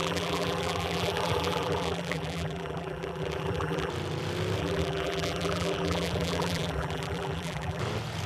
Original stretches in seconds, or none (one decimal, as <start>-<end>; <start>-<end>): 3.9-4.6; 7.8-8.3